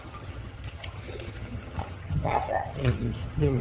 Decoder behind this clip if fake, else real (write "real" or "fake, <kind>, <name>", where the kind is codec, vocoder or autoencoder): fake, vocoder, HiFi-GAN